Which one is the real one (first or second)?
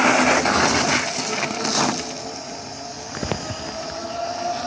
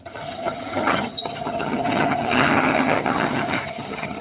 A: first